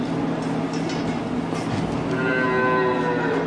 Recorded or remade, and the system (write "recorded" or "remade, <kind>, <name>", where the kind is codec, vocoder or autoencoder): recorded